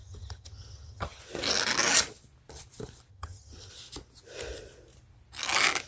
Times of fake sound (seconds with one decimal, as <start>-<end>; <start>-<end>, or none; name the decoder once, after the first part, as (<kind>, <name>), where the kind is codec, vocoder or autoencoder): 0.0-1.2 (vocoder, HiFi-GAN); 3.1-3.7